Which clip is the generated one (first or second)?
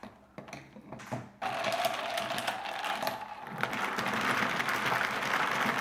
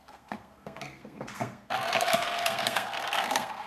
second